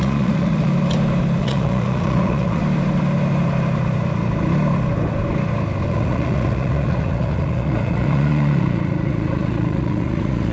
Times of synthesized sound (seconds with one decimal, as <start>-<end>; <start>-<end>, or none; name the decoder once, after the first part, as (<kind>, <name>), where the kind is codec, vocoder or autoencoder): 0.0-0.7 (vocoder, Vocos); 1.4-2.6; 5.9-10.5